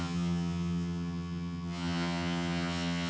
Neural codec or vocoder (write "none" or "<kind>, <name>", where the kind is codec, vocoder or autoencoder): vocoder, HiFi-GAN